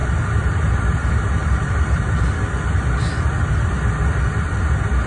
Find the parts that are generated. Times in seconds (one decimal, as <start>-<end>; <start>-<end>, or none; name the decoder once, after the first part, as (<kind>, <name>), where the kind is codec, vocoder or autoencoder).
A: 0.0-0.8 (vocoder, BigVGAN v2); 1.4-2.2